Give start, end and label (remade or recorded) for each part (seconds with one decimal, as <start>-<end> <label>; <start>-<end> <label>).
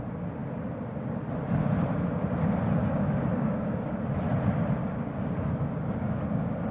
0.0-2.9 recorded; 2.9-3.9 remade; 3.9-4.9 recorded; 4.9-6.7 remade